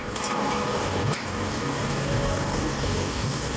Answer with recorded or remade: remade